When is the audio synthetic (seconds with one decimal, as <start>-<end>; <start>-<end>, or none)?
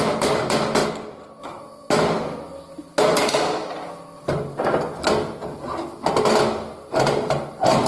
none